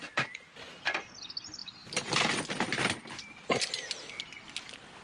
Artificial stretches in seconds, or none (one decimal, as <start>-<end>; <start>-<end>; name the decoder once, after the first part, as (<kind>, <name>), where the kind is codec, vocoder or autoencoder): none